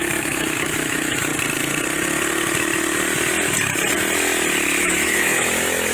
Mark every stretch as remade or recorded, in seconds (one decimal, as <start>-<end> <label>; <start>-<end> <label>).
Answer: 0.0-1.3 remade; 1.3-4.8 recorded; 4.8-5.9 remade